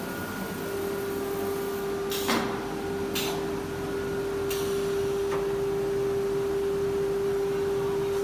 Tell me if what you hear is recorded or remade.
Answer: recorded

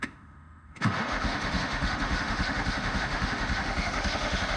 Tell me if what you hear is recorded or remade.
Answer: remade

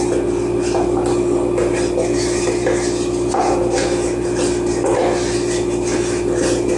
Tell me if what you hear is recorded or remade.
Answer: recorded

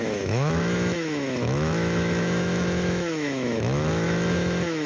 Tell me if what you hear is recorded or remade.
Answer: remade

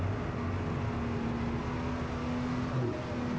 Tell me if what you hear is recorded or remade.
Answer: recorded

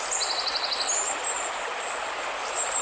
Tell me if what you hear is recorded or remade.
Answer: recorded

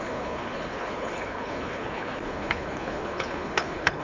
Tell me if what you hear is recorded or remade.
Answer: remade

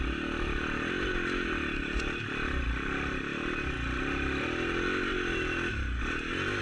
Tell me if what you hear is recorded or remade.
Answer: recorded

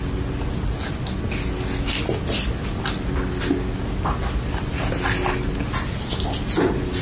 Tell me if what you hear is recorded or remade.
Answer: recorded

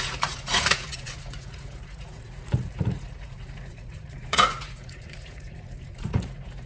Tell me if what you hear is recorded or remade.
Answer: remade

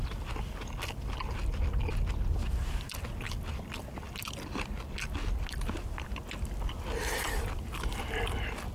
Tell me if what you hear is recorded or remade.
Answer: recorded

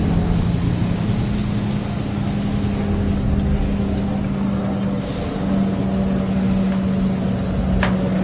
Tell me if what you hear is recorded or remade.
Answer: recorded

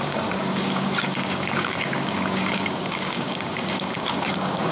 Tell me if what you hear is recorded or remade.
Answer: remade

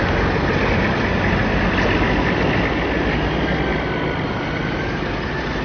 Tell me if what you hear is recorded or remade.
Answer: recorded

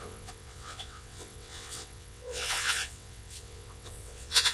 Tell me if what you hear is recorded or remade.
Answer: remade